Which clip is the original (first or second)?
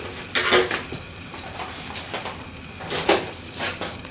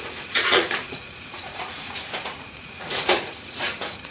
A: first